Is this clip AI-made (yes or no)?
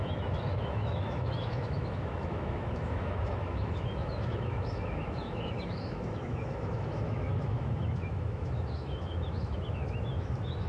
yes